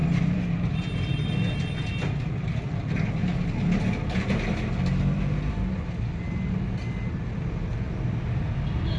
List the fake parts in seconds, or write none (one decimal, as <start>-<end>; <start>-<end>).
none